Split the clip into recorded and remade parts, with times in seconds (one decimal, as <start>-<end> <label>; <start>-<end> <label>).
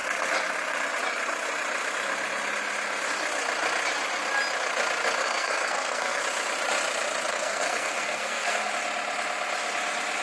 0.0-5.2 recorded; 5.2-6.2 remade; 6.2-7.3 recorded; 7.3-8.7 remade; 8.7-10.2 recorded